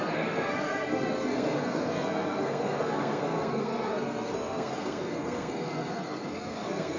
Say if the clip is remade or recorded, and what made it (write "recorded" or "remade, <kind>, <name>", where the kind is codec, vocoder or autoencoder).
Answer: remade, codec, SNAC